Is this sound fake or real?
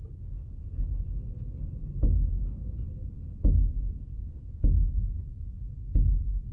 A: real